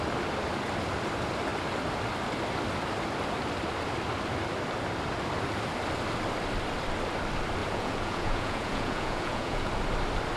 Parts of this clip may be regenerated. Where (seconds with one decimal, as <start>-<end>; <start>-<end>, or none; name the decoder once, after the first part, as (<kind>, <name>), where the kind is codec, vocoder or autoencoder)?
7.6-9.7 (vocoder, Vocos)